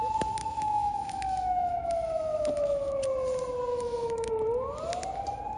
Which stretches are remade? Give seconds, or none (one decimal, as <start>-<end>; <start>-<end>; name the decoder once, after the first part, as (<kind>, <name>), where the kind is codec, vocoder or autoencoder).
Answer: 0.4-3.0 (autoencoder, DAC-VAE); 3.7-4.3